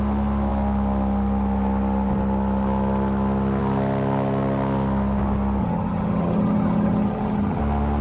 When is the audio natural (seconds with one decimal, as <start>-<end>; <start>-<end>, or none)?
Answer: 0.0-5.6; 7.6-8.0